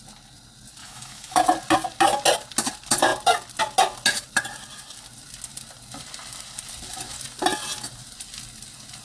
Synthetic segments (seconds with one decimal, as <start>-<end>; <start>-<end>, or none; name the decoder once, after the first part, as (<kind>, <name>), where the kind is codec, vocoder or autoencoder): 0.8-1.4 (autoencoder, DAC-VAE)